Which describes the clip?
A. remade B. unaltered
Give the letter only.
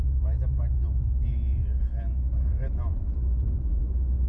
B